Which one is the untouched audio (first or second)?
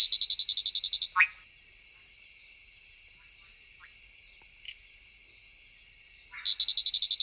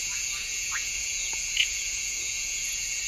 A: first